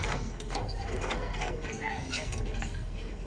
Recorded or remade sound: remade